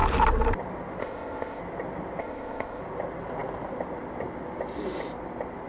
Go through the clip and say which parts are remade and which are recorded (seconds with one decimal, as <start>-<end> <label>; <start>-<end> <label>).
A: 0.0-1.0 recorded; 1.0-1.6 remade; 1.6-2.2 recorded; 2.2-2.8 remade; 2.8-5.7 recorded